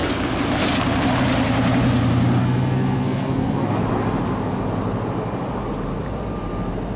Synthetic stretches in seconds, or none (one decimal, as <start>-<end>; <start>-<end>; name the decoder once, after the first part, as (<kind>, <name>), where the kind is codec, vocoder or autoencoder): 2.4-3.8 (codec, SNAC)